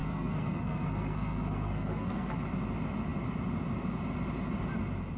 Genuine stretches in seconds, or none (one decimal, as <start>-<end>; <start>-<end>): 2.3-5.2